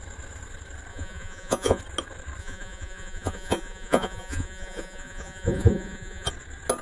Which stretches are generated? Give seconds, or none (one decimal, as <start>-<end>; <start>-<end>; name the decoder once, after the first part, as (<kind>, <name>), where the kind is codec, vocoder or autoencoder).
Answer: 0.9-1.8 (vocoder, Vocos); 2.4-6.3